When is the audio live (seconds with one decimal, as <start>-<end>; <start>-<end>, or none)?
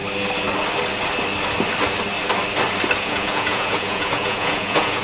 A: 0.0-3.0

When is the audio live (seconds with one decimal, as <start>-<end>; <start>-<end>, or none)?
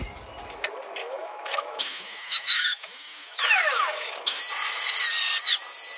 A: 0.0-1.0; 4.4-6.0